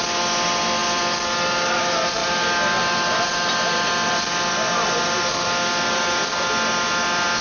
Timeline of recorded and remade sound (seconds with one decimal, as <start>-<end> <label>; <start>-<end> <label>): 0.0-7.4 recorded